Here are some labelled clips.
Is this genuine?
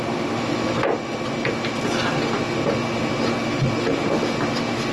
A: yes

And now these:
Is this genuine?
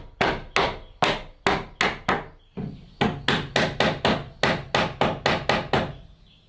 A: yes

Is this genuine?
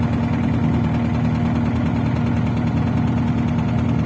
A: yes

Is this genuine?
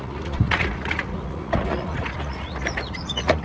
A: no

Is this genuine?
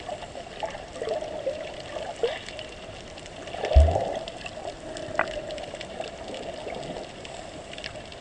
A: yes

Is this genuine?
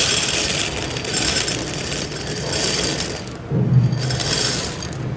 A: yes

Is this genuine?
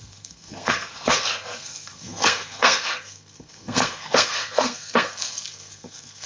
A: no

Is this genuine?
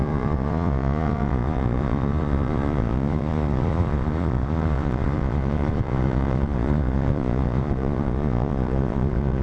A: no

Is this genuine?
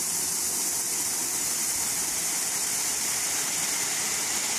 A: yes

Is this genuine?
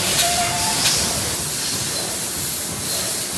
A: no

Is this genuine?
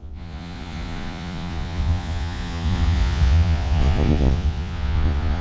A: no